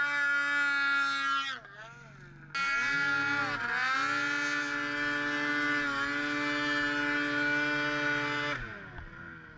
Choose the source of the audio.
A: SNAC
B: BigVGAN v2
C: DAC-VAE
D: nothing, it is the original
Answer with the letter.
D